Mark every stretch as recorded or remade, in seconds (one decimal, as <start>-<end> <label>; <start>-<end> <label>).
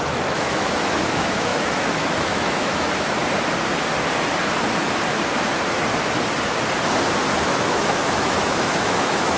0.0-3.2 remade; 3.2-7.4 recorded; 7.4-9.4 remade